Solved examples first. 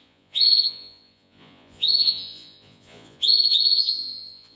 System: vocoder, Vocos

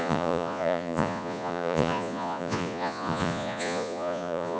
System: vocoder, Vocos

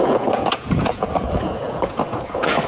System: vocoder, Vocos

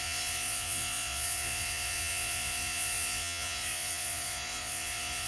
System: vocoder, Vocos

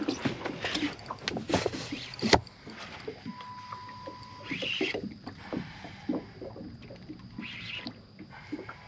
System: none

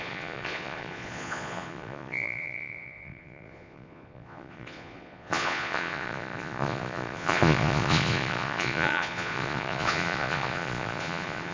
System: vocoder, Vocos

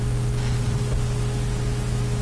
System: none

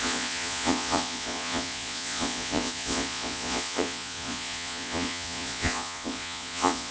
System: vocoder, Vocos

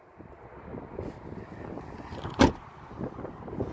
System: none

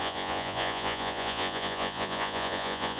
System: vocoder, Vocos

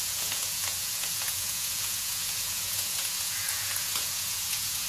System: vocoder, Vocos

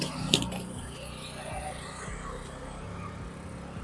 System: none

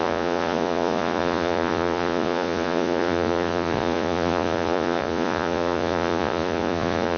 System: vocoder, Vocos